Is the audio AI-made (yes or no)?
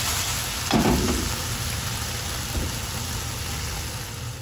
no